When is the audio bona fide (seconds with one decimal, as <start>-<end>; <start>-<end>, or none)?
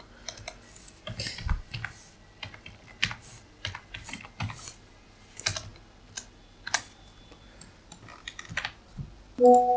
0.0-9.8